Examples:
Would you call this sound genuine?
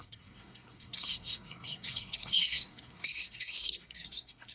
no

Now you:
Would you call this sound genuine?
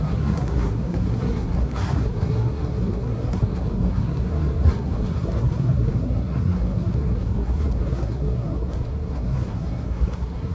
no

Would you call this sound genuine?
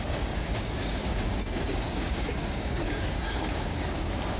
no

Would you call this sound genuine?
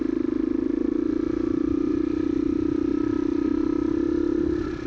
yes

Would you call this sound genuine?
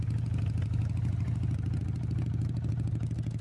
yes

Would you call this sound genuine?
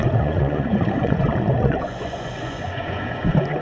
no